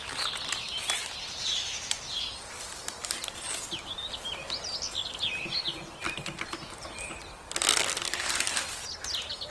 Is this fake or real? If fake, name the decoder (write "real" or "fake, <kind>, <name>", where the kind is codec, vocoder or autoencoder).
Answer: real